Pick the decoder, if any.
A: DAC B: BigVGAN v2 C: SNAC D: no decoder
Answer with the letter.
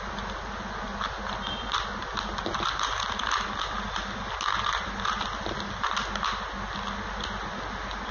D